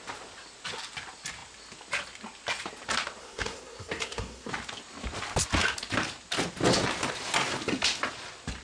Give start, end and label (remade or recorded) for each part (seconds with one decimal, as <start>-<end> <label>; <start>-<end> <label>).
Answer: 0.0-3.2 recorded; 3.2-4.5 remade; 4.5-8.6 recorded